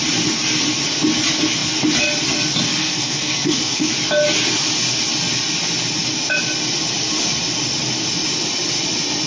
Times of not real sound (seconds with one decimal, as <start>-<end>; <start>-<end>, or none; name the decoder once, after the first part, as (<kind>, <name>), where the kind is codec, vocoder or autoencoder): 2.8-3.9 (codec, SNAC)